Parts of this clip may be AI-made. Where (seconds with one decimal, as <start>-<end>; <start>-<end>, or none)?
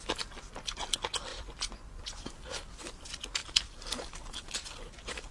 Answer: 1.3-2.3